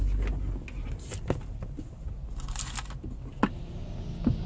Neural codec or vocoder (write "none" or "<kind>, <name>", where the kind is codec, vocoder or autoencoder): none